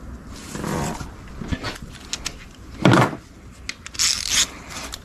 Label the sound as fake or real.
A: real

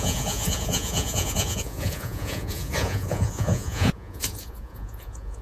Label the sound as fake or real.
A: fake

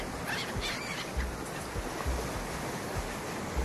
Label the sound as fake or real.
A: real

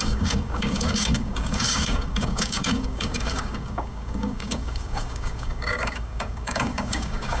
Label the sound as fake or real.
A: fake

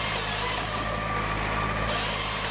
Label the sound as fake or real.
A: real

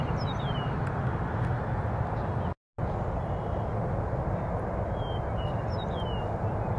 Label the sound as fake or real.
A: real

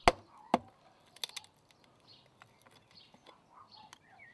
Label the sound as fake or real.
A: real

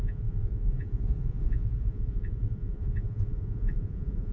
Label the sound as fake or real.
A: fake